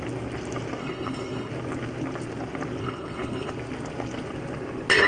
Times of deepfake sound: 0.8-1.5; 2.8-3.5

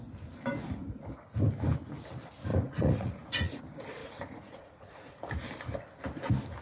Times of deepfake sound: 2.5-3.6; 4.0-5.2

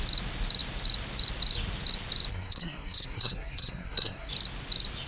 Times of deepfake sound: 2.3-4.3

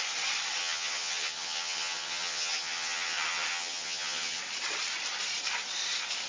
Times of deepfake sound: 0.6-4.4

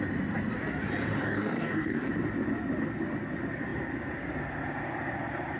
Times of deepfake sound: 1.2-2.1